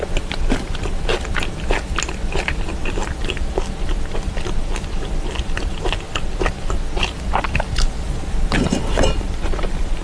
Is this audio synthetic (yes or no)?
no